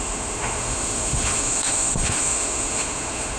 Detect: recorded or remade remade